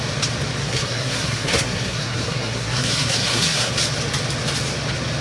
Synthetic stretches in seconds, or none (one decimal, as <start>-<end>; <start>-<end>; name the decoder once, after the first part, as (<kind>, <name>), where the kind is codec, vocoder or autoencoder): 0.6-3.7 (codec, SNAC)